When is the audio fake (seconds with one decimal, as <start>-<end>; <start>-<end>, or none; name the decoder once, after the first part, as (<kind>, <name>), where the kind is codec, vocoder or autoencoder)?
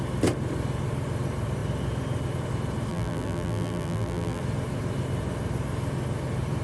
2.9-4.4 (vocoder, BigVGAN v2)